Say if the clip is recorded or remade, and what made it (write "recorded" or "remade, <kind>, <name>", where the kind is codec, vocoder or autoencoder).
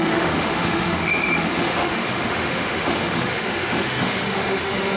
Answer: remade, autoencoder, DAC-VAE